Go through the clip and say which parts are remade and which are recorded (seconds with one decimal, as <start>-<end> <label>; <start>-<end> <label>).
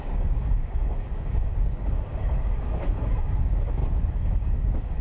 0.0-3.8 remade; 3.8-4.3 recorded; 4.3-5.0 remade